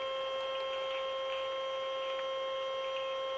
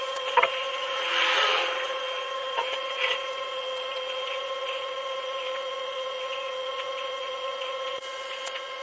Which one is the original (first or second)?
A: first